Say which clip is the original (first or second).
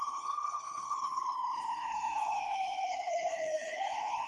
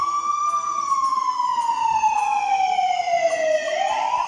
second